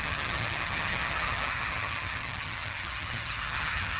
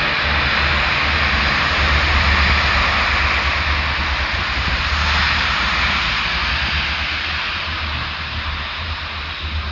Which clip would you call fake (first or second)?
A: first